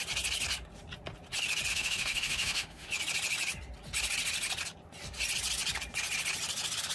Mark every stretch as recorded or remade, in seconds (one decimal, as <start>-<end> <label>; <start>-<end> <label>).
0.0-1.7 recorded; 1.7-2.9 remade; 2.9-6.9 recorded